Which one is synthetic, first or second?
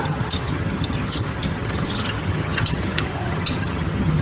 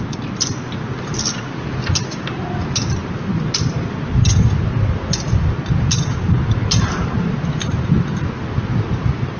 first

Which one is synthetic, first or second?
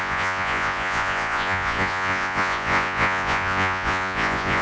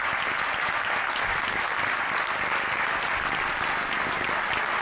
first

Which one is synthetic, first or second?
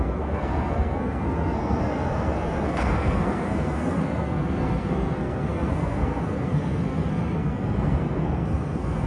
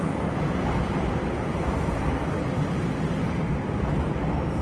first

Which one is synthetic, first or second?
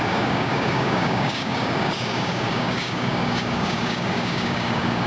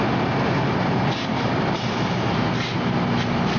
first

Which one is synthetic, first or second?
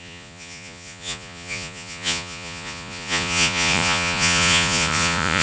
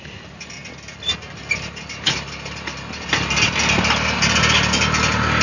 first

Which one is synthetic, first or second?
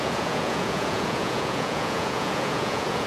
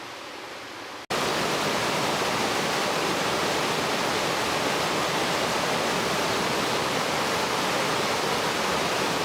first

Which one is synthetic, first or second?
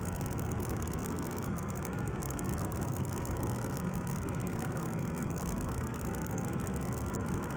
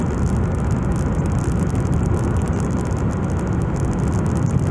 first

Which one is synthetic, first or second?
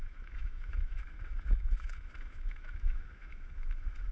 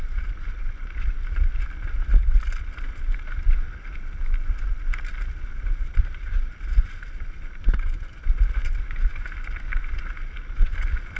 first